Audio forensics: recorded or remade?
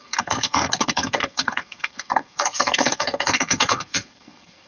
remade